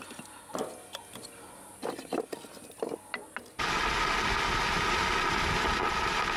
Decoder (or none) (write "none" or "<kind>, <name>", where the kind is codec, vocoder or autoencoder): none